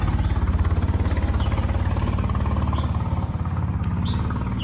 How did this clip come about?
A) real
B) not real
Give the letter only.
A